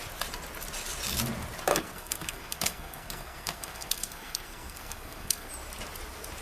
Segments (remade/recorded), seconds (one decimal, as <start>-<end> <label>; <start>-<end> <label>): 0.0-1.7 recorded; 1.7-5.5 remade; 5.5-6.4 recorded